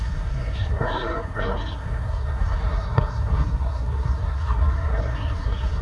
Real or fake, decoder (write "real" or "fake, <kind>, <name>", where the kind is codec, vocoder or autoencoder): fake, codec, SNAC